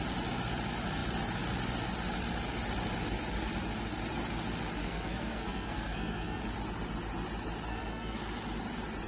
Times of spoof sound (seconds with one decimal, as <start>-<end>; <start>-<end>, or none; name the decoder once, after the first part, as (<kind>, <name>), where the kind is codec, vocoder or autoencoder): 4.8-6.4 (codec, SNAC); 7.7-8.2